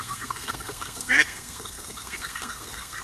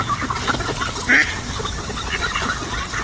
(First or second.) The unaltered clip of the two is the second